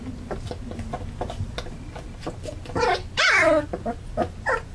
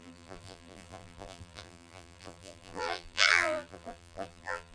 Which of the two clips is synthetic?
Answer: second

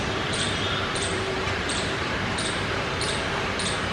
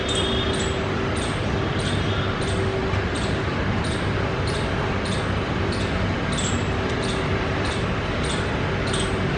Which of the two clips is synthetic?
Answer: first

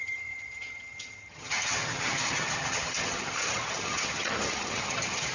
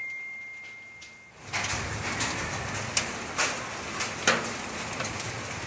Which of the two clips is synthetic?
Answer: first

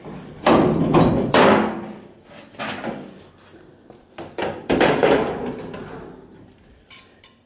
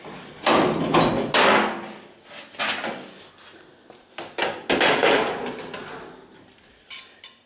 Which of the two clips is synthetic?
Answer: first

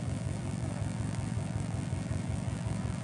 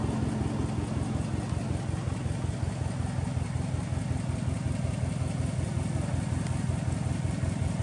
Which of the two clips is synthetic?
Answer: first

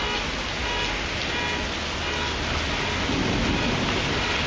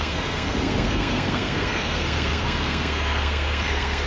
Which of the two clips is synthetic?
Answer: second